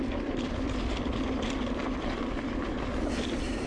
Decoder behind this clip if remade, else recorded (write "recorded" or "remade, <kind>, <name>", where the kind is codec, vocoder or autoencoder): recorded